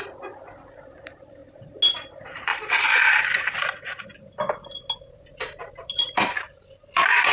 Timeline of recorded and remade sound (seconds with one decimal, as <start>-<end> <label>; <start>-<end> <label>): 0.0-1.4 remade; 1.4-2.1 recorded; 2.1-2.5 remade; 2.5-5.1 recorded; 5.1-7.3 remade